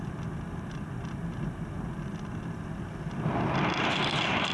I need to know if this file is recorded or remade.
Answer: recorded